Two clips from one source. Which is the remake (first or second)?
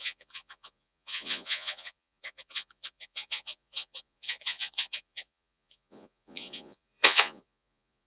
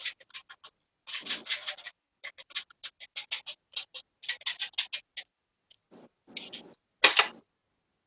first